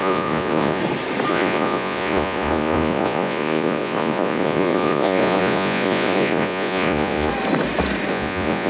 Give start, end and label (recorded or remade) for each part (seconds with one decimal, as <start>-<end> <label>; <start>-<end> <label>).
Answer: 0.0-0.8 remade; 0.8-1.3 recorded; 1.3-7.3 remade; 7.3-8.1 recorded; 8.1-8.7 remade